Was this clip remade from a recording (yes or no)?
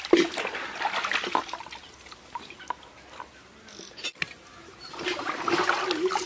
no